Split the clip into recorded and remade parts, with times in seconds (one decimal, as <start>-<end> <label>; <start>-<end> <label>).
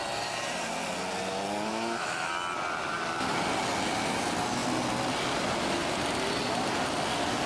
0.0-1.7 recorded; 1.7-2.3 remade; 2.3-7.5 recorded